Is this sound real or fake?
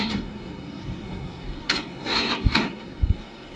fake